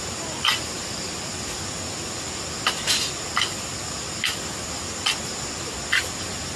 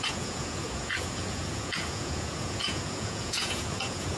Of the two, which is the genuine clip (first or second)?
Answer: first